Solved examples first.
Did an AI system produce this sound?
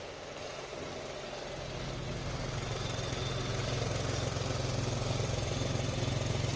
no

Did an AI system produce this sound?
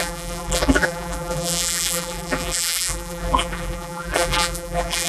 yes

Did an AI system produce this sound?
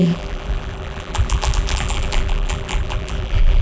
yes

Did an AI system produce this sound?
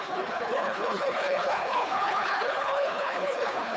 yes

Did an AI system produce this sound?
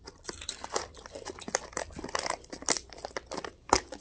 no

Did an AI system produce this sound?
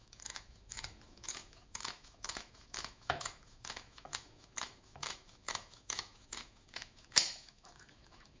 yes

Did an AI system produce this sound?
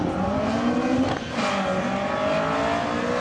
no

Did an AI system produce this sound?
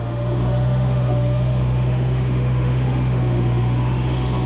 yes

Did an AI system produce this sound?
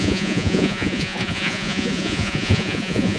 yes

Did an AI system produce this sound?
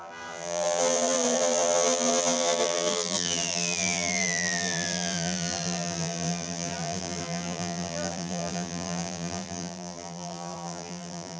yes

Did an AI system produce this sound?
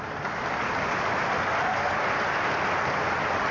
no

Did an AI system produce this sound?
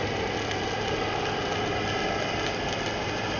no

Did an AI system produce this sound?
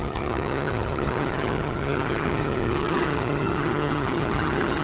yes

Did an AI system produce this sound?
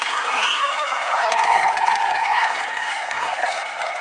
yes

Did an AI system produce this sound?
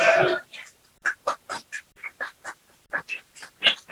yes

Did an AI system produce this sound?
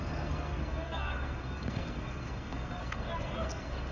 yes